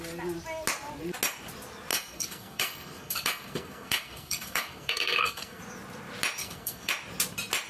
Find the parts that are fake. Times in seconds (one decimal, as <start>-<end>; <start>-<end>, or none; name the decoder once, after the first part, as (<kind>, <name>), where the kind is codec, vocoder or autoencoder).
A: 1.9-5.6 (codec, SNAC); 6.4-6.9